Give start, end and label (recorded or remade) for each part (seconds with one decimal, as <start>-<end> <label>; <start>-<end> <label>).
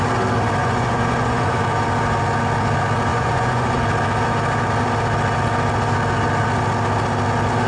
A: 0.0-0.6 recorded; 0.6-1.6 remade; 1.6-3.1 recorded; 3.1-3.8 remade; 3.8-7.7 recorded